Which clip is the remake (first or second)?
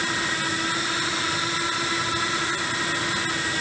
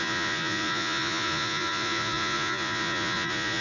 second